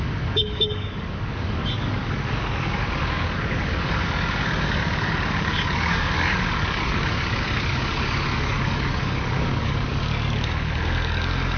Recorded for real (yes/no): no